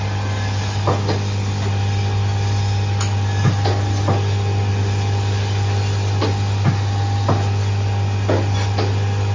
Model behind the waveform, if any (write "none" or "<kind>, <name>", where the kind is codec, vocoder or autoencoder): none